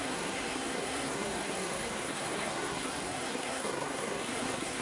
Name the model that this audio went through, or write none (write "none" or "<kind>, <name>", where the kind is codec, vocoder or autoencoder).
codec, SNAC